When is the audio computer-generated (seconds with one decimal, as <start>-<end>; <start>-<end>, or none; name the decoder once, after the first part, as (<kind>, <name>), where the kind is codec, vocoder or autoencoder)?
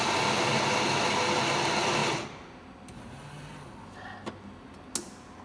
none